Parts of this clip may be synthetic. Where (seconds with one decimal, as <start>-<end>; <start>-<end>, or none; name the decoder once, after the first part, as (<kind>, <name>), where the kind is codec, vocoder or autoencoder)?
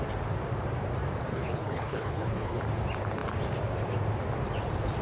1.3-2.6 (codec, HILCodec)